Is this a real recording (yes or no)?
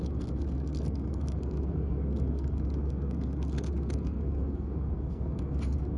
no